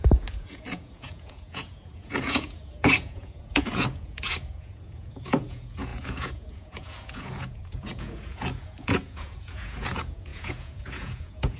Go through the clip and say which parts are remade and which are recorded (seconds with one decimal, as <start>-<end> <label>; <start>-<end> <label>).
0.0-11.6 remade